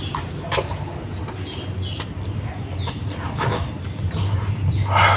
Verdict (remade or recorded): recorded